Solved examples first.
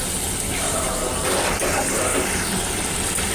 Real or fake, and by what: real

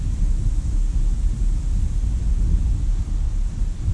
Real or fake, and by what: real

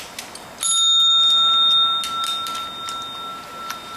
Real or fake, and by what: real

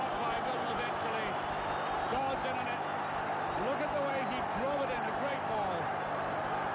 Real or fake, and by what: real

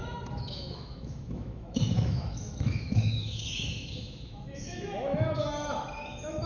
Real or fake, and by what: fake, autoencoder, DAC-VAE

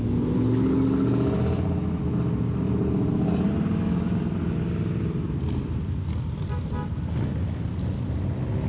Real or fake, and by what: real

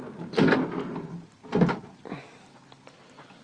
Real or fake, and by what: real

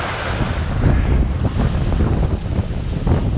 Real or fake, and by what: real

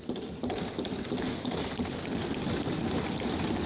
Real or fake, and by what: real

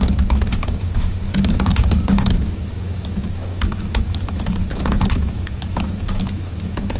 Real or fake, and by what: fake, autoencoder, DAC-VAE